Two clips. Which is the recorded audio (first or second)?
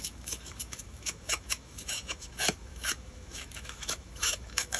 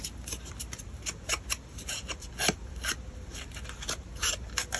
second